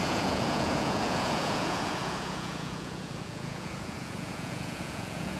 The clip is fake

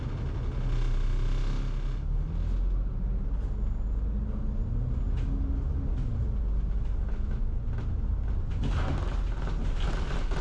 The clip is real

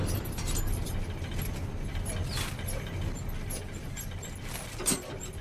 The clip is real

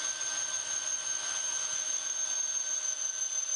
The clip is real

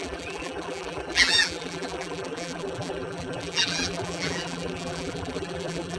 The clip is fake